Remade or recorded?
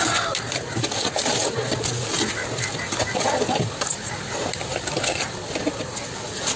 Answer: recorded